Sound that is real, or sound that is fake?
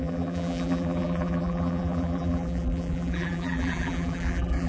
fake